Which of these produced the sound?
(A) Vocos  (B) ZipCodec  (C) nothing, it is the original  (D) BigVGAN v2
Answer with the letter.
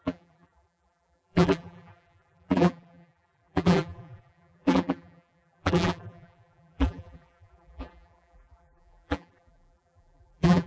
D